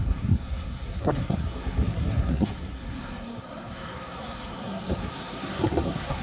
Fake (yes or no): yes